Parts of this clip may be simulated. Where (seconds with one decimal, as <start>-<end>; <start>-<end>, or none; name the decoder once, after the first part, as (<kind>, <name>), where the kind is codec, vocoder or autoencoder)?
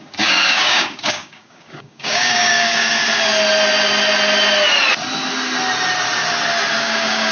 0.0-3.0 (codec, DAC); 6.8-7.3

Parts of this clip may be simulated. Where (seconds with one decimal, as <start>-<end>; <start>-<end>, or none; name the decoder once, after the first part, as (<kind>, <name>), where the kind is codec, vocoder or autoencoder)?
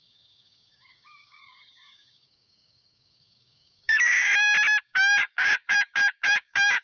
0.0-4.3 (codec, DAC); 4.8-6.8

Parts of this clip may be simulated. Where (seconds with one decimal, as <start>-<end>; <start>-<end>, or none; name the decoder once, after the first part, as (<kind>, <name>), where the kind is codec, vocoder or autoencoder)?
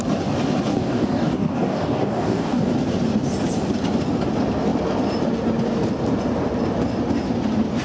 0.7-2.7 (codec, DAC)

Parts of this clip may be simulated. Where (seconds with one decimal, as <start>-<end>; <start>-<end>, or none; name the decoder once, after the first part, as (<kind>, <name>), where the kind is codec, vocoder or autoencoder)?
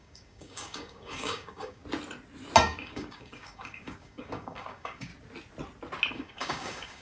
0.0-1.8 (codec, DAC); 2.6-5.1; 6.1-7.0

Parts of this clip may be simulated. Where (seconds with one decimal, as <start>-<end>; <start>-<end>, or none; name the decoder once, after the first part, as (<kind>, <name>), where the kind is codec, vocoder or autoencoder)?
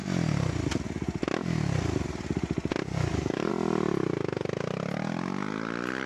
2.9-3.5 (codec, DAC)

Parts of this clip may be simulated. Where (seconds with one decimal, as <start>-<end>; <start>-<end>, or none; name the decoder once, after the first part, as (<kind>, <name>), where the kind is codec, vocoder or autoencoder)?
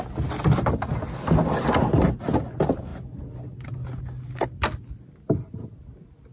none